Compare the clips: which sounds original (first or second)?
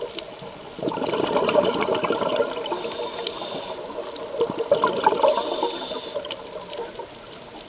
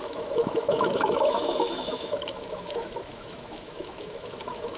first